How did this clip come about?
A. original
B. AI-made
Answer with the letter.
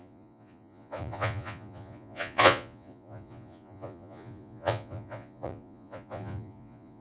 B